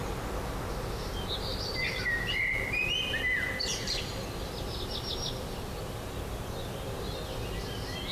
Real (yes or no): yes